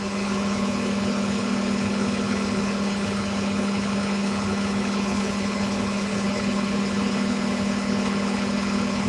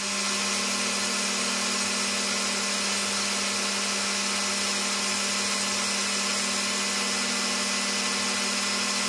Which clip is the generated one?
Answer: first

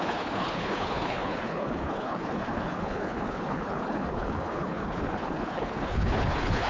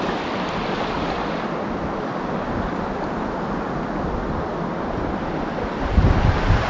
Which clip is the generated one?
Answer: first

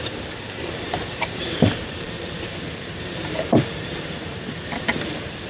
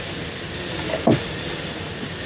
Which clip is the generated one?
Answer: first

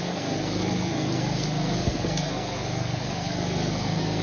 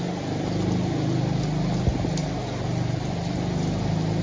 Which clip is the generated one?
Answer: first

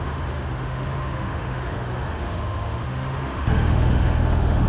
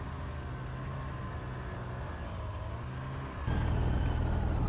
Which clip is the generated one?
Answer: first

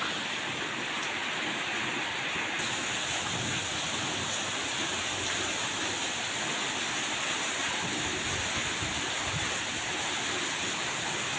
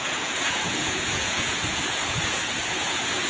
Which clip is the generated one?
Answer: second